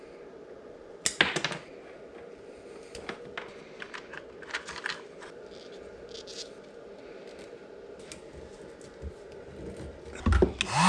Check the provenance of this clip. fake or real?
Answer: real